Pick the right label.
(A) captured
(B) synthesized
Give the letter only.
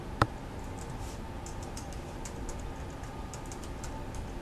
A